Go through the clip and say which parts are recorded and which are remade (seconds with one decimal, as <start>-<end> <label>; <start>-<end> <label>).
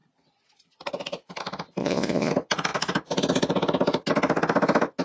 0.0-1.8 recorded; 1.8-2.3 remade; 2.3-5.0 recorded